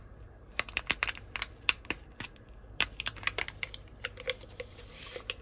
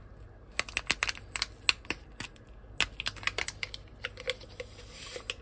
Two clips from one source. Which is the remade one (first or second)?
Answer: first